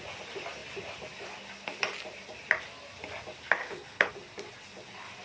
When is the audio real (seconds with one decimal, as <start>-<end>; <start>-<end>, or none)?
0.0-3.6; 4.1-5.2